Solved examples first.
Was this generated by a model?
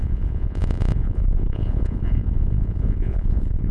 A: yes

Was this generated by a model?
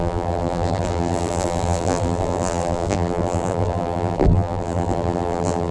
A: yes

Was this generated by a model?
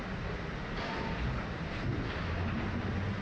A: no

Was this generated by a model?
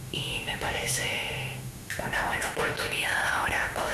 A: yes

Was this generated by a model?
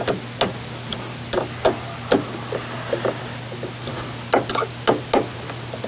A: no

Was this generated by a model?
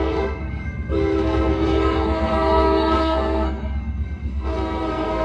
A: yes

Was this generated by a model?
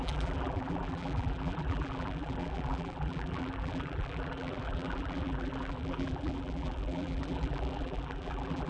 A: yes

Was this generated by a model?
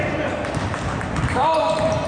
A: no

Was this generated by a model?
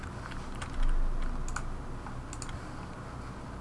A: no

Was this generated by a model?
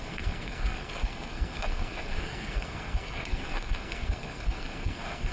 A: yes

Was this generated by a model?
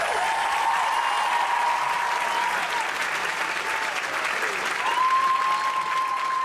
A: no